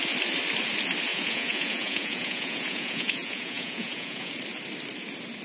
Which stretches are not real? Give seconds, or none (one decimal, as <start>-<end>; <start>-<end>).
1.1-4.3